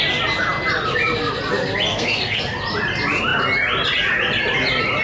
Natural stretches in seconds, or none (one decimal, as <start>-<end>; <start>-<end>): 0.0-1.9; 2.4-5.0